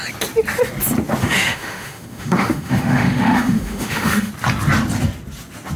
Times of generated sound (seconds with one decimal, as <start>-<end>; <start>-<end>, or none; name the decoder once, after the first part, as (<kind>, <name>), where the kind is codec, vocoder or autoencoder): 1.2-4.3 (autoencoder, DAC-VAE)